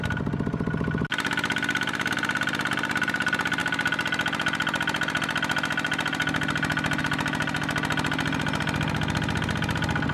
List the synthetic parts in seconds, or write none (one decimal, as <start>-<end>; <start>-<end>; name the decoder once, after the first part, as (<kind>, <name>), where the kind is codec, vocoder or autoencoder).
none